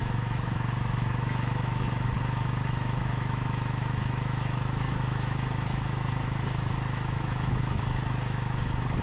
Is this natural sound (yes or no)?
no